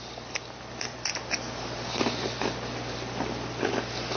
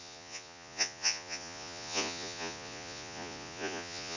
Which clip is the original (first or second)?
first